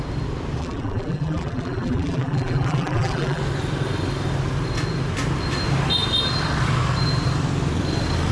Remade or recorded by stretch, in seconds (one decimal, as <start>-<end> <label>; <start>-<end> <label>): 0.0-0.6 recorded; 0.6-3.4 remade; 3.4-8.3 recorded